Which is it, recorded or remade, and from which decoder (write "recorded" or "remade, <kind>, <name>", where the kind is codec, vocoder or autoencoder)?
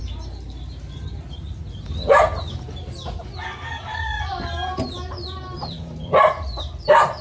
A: recorded